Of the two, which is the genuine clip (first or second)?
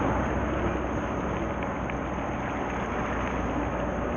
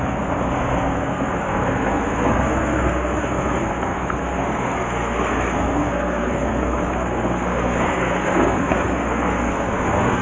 first